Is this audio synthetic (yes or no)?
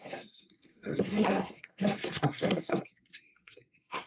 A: yes